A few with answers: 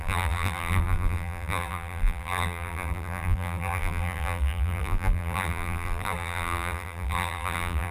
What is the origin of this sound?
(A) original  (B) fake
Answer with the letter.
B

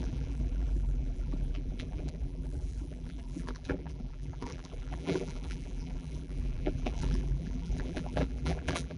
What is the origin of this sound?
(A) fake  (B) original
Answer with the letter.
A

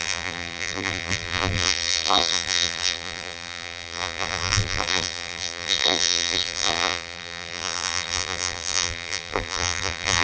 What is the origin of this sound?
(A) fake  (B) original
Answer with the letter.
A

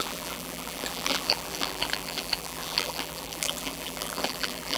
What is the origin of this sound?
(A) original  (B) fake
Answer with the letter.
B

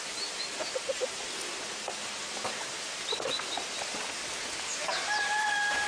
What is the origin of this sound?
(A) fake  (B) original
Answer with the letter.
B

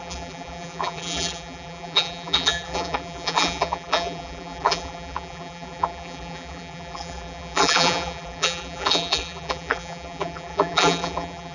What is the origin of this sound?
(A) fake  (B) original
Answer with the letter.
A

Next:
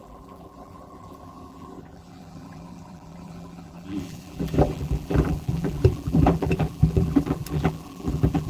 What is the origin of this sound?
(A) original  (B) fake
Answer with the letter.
B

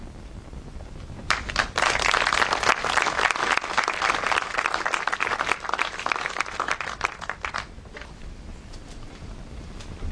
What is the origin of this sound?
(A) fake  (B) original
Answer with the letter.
A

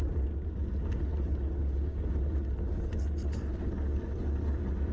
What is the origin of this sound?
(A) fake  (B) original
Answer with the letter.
B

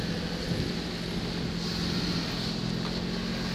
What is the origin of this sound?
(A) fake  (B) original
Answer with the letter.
B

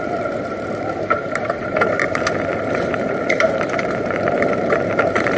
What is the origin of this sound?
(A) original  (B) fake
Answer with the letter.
B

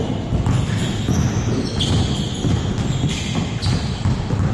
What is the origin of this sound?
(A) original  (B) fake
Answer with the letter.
A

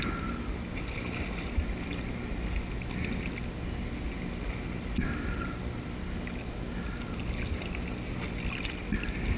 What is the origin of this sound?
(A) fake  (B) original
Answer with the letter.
B